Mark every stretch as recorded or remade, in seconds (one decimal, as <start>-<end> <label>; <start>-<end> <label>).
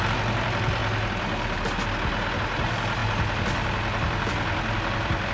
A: 0.0-0.8 remade; 0.8-2.4 recorded; 2.4-5.3 remade